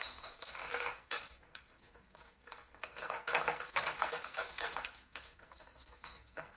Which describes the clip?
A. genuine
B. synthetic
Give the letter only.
B